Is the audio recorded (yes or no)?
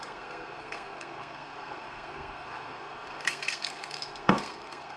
no